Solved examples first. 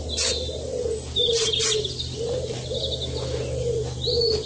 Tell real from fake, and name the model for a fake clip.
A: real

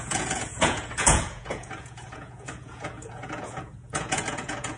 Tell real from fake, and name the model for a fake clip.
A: fake, vocoder, Vocos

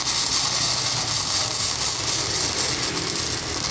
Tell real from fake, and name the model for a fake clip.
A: real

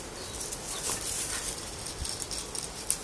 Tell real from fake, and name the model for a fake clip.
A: real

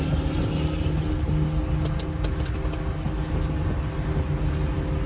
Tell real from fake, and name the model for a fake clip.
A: real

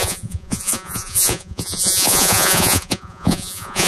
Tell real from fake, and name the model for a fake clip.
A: fake, vocoder, Vocos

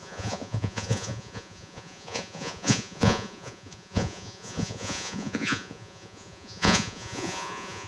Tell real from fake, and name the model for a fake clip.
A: fake, vocoder, Vocos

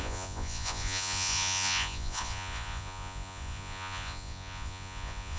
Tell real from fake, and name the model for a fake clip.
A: fake, vocoder, Vocos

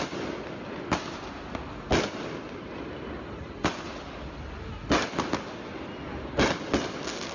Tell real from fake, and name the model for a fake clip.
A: real